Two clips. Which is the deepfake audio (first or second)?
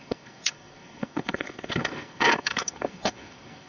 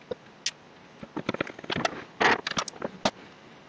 first